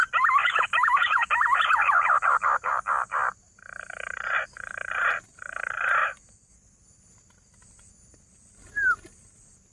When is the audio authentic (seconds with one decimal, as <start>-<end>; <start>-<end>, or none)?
0.0-0.4; 1.3-9.7